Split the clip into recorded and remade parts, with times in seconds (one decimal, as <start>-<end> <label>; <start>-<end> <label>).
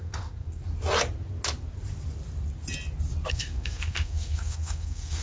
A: 0.0-0.6 remade; 0.6-3.3 recorded; 3.3-5.2 remade